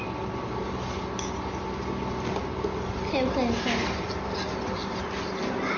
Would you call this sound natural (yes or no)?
yes